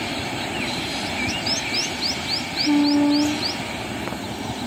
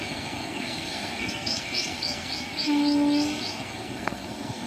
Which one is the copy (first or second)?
second